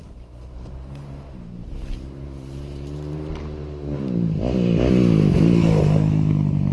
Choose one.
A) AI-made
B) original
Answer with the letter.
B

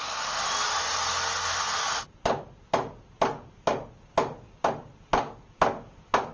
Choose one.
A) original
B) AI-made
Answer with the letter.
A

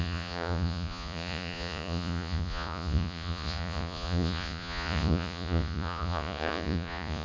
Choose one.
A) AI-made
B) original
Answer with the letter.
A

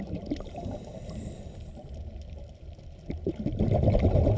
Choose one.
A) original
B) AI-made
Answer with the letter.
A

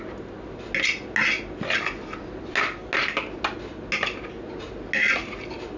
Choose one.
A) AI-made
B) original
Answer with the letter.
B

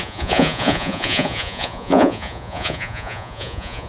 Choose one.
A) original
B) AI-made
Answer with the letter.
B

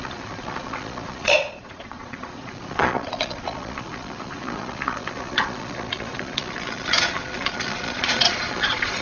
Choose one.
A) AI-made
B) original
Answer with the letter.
A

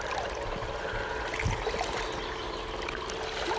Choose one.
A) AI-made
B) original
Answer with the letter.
B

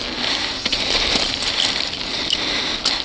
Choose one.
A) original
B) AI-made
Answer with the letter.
A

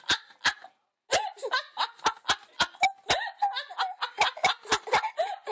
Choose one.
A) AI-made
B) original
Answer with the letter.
B